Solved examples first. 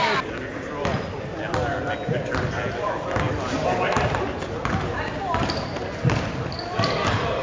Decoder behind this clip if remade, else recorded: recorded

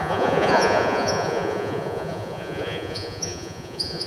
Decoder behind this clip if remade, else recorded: remade, vocoder, Vocos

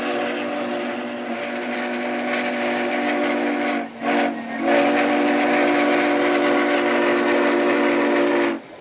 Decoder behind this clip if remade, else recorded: recorded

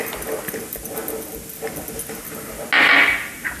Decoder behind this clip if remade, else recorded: recorded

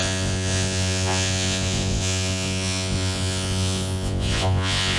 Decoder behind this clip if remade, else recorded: remade, vocoder, Vocos